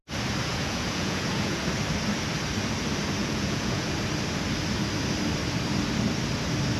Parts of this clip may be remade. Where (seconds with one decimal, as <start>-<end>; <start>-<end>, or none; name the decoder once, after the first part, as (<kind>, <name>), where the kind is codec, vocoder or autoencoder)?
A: 0.5-1.6 (vocoder, Vocos); 3.2-3.9